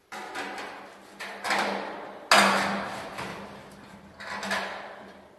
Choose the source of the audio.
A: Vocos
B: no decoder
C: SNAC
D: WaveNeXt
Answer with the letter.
B